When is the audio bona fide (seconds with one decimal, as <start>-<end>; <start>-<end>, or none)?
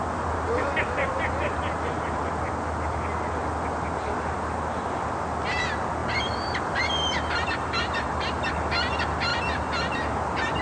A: 0.0-6.0; 6.8-10.6